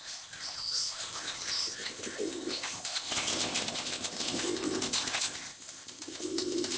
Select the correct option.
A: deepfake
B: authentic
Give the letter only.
A